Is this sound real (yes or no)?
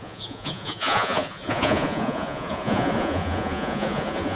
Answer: no